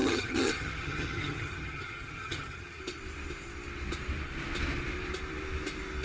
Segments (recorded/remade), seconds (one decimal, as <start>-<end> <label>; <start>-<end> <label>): 0.0-2.8 remade; 2.8-6.0 recorded